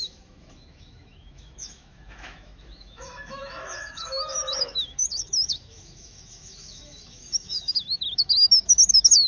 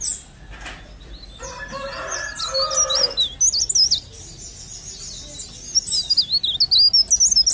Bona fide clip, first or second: second